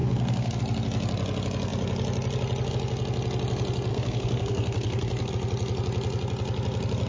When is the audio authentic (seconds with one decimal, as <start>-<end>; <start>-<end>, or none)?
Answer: 0.6-3.9; 5.3-7.1